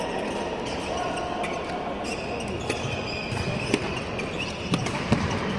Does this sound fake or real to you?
real